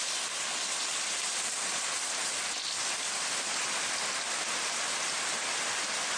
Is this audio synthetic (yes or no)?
no